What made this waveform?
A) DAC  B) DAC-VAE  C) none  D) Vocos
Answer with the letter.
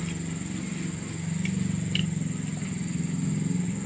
C